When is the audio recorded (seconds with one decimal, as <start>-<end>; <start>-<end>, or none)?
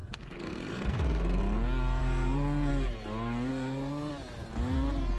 1.4-2.0; 2.7-3.5; 4.1-5.2